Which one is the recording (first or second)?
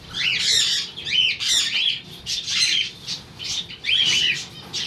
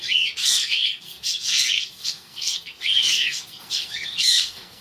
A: first